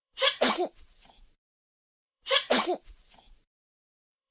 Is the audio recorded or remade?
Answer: remade